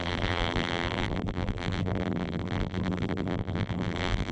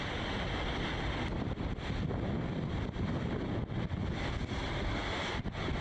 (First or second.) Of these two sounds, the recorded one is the second